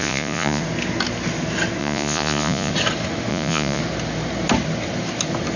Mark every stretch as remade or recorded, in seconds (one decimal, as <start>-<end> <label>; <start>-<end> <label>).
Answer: 0.0-0.6 remade; 0.6-1.8 recorded; 1.8-2.7 remade; 2.7-3.3 recorded; 3.3-3.8 remade; 3.8-5.6 recorded